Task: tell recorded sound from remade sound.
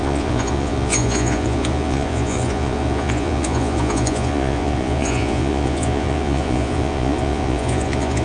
remade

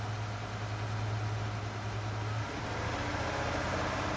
recorded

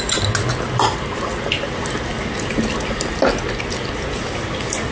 recorded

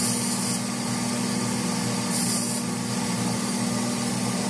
recorded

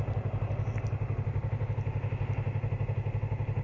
recorded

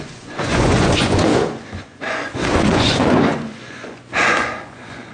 remade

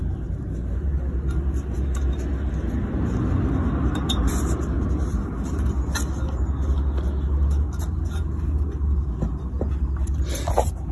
recorded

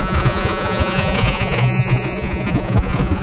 remade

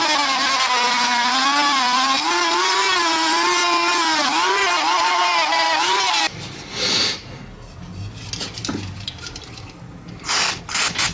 recorded